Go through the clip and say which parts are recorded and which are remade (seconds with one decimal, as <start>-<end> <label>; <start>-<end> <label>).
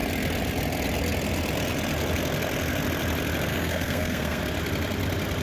0.0-3.5 recorded; 3.5-4.4 remade; 4.4-5.4 recorded